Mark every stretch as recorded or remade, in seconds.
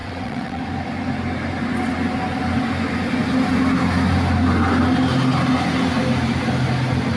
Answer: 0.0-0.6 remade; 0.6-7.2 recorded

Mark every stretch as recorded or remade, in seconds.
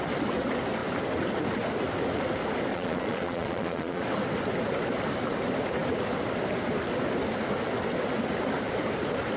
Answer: 0.0-2.7 recorded; 2.7-4.0 remade; 4.0-9.4 recorded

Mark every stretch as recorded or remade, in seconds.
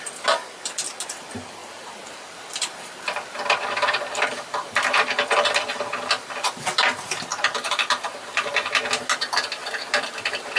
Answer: 0.0-1.6 recorded; 1.6-5.8 remade; 5.8-7.3 recorded; 7.3-8.9 remade; 8.9-9.6 recorded; 9.6-10.6 remade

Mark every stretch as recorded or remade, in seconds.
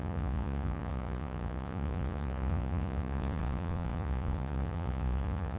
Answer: 0.0-5.6 remade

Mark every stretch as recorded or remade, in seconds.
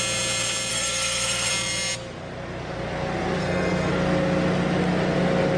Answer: 0.0-0.7 recorded; 0.7-1.5 remade; 1.5-3.4 recorded; 3.4-3.9 remade; 3.9-5.6 recorded